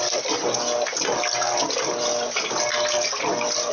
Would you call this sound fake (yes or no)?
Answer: no